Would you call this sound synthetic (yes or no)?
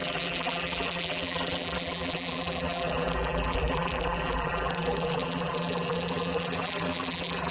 yes